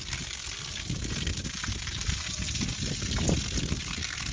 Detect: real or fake real